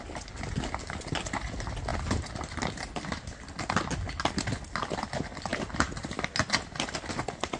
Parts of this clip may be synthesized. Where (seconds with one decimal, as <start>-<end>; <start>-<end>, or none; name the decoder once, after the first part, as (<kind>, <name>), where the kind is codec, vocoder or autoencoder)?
none